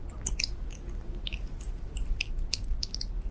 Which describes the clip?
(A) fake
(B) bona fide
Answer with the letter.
B